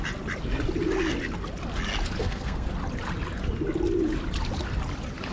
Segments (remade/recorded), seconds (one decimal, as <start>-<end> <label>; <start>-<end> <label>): 0.0-2.2 recorded; 2.2-2.7 remade; 2.7-5.3 recorded